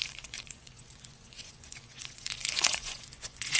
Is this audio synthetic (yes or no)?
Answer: yes